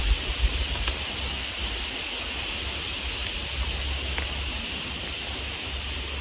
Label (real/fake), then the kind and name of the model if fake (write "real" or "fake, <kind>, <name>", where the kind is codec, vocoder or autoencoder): real